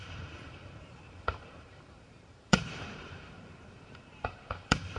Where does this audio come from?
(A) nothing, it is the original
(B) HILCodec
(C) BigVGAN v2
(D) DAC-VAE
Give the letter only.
C